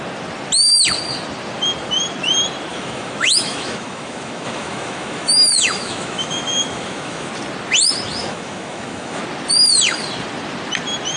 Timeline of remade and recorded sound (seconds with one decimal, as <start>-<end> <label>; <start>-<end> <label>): 0.0-2.7 recorded; 2.7-7.3 remade; 7.3-8.2 recorded; 8.2-9.2 remade; 9.2-11.2 recorded